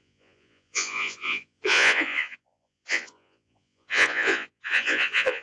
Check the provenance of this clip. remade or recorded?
remade